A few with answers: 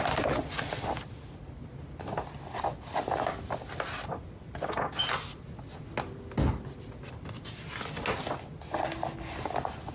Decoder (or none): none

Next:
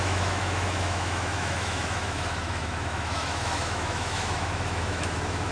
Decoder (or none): autoencoder, DAC-VAE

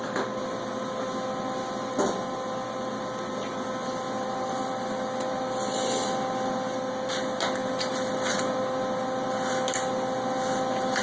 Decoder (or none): none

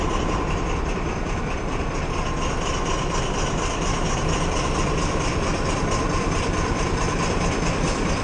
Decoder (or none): vocoder, BigVGAN v2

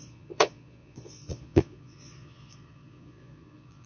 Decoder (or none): vocoder, Vocos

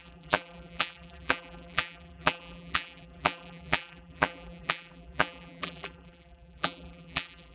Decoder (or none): vocoder, BigVGAN v2